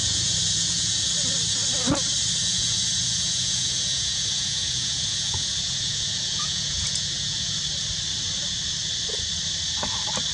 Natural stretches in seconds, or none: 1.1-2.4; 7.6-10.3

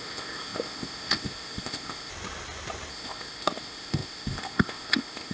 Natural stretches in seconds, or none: 2.1-2.9

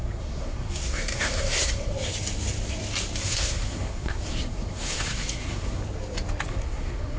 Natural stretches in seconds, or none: 1.9-3.2; 5.8-6.5

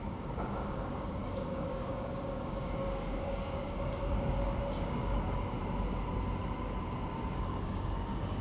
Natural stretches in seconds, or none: 5.6-7.4